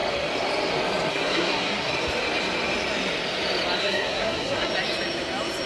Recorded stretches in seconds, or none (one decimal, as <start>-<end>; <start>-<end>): 0.0-1.1; 1.9-3.8; 4.7-5.7